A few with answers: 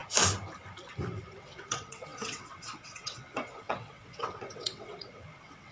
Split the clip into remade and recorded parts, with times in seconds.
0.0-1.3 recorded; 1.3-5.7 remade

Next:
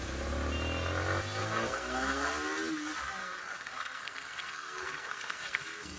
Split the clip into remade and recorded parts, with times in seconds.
0.0-1.4 recorded; 1.4-2.3 remade; 2.3-3.2 recorded; 3.2-6.0 remade

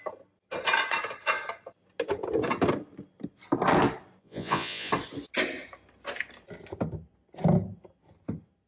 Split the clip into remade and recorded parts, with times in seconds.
0.0-4.2 recorded; 4.2-4.9 remade; 4.9-8.7 recorded